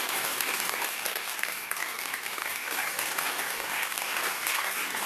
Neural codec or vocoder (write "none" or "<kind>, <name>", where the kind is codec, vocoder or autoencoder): codec, DAC